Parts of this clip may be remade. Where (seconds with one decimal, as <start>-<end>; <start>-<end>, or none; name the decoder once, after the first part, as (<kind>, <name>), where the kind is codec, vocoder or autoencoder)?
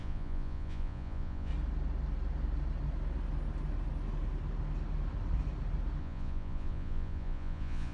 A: 0.0-1.5 (vocoder, Vocos); 6.0-7.9